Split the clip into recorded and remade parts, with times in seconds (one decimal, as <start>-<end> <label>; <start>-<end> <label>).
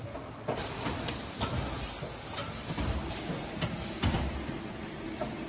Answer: 0.0-2.4 recorded; 2.4-2.9 remade; 2.9-5.5 recorded